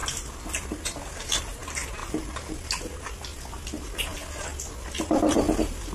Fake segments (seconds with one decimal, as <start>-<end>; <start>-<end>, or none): 2.0-2.7